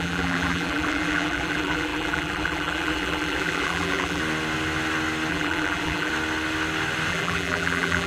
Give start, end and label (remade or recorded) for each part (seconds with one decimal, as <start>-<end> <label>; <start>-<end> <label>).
0.0-4.2 remade; 4.2-5.3 recorded; 5.3-6.1 remade; 6.1-7.1 recorded; 7.1-8.1 remade